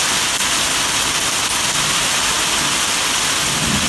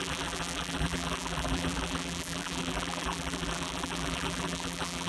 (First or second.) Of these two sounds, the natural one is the first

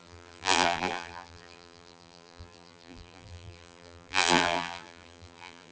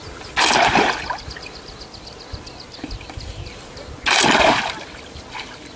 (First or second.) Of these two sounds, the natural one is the second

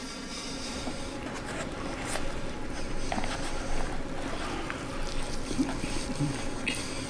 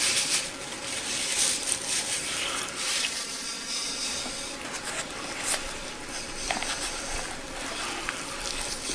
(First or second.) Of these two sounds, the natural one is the first